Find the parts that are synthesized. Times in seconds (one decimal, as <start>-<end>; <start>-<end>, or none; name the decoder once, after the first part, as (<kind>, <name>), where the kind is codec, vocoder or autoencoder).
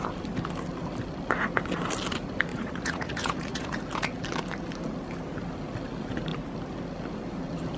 2.5-3.8 (vocoder, Vocos)